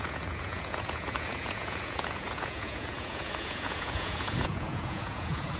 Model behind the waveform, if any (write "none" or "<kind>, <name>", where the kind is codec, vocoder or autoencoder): vocoder, Vocos